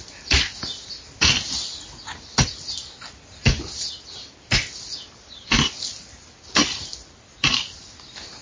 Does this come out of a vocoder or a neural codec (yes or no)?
no